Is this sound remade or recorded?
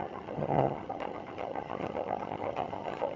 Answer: remade